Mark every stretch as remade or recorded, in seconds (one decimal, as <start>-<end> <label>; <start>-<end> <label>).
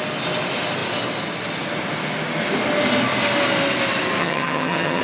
0.0-4.2 recorded; 4.2-5.0 remade